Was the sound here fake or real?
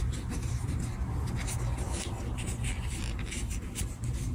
real